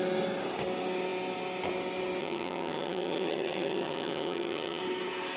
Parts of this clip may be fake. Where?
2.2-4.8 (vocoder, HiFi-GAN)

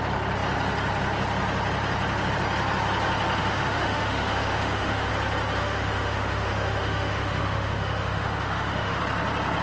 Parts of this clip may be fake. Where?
3.4-5.1 (autoencoder, DAC-VAE); 5.6-9.0

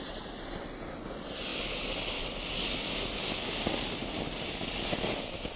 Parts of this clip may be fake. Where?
none

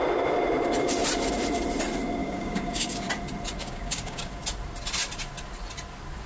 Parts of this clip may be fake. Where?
2.2-3.1 (codec, DAC); 3.6-4.3

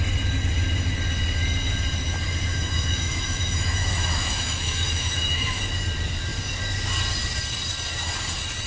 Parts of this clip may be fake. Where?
2.5-5.6 (autoencoder, DAC-VAE)

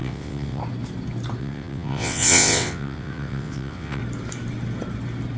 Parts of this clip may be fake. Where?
0.0-0.6 (vocoder, WaveNeXt); 1.4-4.0